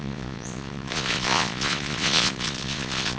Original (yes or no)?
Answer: no